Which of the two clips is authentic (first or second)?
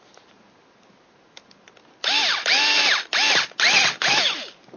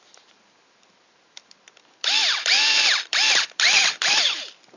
first